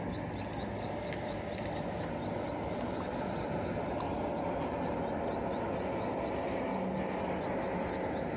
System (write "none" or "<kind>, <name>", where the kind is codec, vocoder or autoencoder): none